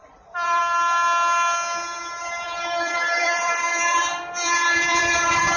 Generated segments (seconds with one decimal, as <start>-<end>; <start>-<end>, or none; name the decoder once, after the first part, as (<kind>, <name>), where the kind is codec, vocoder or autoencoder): 0.0-0.6 (vocoder, BigVGAN v2); 2.2-5.6

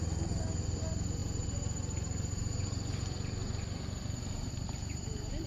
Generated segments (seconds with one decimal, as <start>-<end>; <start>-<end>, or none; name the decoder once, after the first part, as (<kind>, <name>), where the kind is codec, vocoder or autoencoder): none

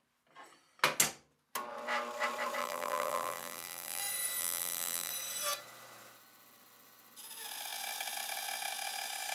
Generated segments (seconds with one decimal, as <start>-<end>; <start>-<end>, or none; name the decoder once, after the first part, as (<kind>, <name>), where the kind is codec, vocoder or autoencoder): 2.6-4.0 (vocoder, BigVGAN v2); 4.4-5.1

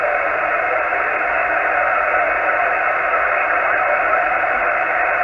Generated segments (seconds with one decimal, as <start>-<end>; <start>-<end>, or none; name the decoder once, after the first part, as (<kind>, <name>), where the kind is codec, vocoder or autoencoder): 0.0-1.6 (vocoder, BigVGAN v2); 3.1-5.2

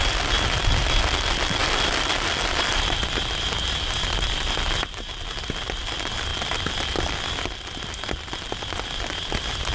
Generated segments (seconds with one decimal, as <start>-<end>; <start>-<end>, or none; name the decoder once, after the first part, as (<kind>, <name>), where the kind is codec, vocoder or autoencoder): 1.6-2.1 (vocoder, BigVGAN v2); 6.3-7.1

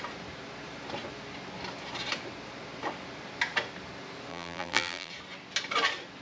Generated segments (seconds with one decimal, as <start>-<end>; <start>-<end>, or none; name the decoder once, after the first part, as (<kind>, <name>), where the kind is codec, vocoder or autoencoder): 4.3-5.1 (vocoder, BigVGAN v2)

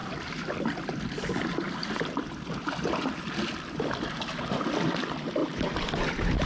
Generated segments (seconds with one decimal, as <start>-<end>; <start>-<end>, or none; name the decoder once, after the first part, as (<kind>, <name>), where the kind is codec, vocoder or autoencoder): 0.0-3.9 (vocoder, BigVGAN v2); 5.4-6.0

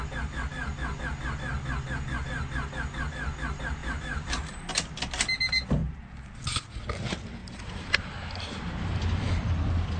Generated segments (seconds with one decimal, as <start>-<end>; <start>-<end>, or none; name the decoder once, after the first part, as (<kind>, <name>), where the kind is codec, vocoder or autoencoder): 3.8-4.7 (vocoder, BigVGAN v2); 7.4-8.5